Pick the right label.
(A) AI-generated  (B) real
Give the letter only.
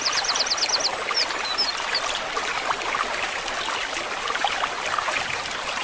B